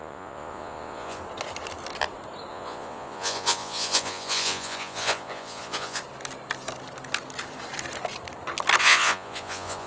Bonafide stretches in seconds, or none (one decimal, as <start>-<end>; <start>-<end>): 1.2-2.5; 6.0-8.8